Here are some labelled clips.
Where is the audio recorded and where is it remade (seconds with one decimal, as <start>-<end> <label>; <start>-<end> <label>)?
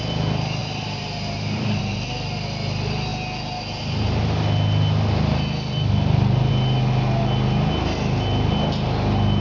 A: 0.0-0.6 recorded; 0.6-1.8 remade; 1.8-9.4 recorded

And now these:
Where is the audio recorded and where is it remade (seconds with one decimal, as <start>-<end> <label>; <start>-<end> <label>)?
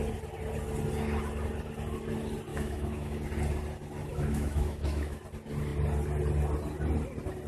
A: 0.0-2.5 recorded; 2.5-3.2 remade; 3.2-4.1 recorded; 4.1-5.2 remade; 5.2-7.5 recorded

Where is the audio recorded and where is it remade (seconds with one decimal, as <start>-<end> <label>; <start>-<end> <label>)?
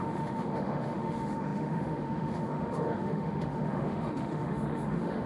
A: 0.0-5.3 remade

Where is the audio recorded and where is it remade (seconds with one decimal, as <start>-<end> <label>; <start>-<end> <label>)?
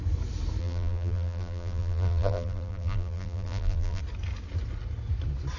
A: 0.0-0.6 recorded; 0.6-4.0 remade; 4.0-5.6 recorded